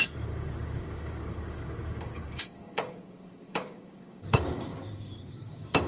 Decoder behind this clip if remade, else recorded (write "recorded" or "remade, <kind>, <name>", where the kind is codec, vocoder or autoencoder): remade, codec, DAC